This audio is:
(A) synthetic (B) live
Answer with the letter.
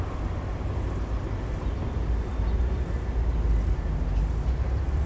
B